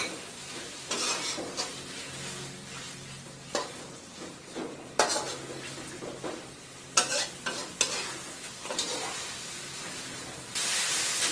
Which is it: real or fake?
real